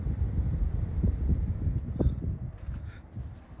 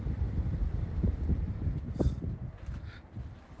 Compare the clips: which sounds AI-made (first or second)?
second